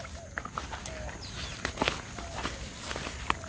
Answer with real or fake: real